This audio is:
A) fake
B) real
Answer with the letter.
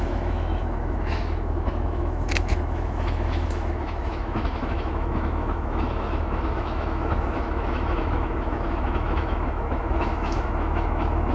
A